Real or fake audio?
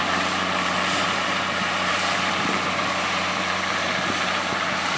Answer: fake